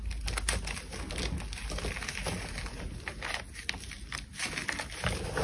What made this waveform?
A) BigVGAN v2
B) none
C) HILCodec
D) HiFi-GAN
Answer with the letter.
B